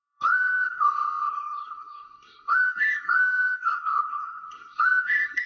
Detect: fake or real fake